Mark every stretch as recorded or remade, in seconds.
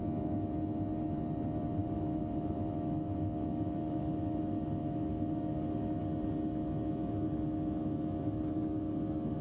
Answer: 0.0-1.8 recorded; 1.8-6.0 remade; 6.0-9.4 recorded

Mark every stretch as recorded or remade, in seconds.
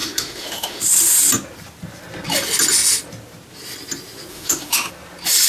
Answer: 0.0-0.8 remade; 0.8-4.3 recorded; 4.3-4.9 remade; 4.9-5.5 recorded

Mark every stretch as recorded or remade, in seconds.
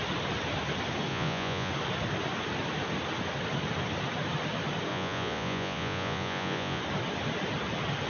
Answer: 0.0-1.1 recorded; 1.1-1.7 remade; 1.7-4.9 recorded; 4.9-6.8 remade; 6.8-8.1 recorded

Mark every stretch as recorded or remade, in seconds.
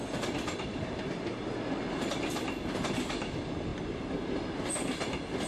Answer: 0.0-5.5 recorded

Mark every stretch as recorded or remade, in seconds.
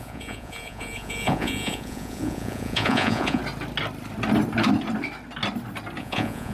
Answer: 0.0-3.4 remade; 3.4-6.0 recorded; 6.0-6.5 remade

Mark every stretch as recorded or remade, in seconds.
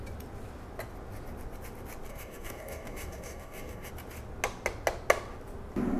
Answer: 0.0-2.1 recorded; 2.1-3.9 remade; 3.9-6.0 recorded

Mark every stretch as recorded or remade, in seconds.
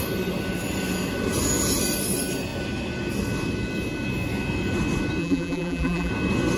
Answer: 0.0-5.2 recorded; 5.2-6.1 remade; 6.1-6.6 recorded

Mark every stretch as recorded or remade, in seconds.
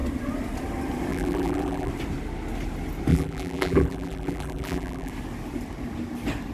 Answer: 0.0-1.1 recorded; 1.1-1.9 remade; 1.9-3.1 recorded; 3.1-5.1 remade; 5.1-6.5 recorded